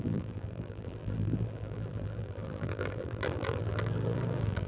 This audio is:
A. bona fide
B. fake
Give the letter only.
B